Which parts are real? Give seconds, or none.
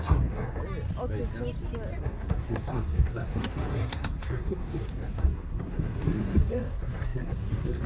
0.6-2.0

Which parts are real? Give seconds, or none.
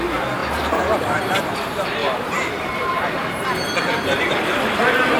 0.0-0.4; 1.4-2.0; 4.4-5.2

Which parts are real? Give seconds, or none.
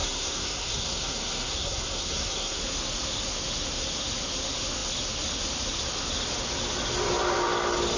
2.6-8.0